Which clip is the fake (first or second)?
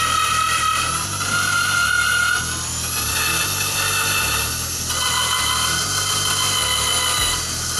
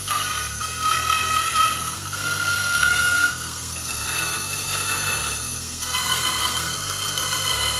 second